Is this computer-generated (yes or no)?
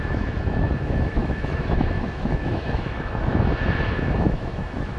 yes